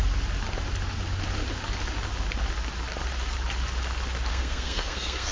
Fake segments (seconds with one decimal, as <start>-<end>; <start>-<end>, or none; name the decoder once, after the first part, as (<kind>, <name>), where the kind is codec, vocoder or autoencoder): 4.3-5.3 (codec, SNAC)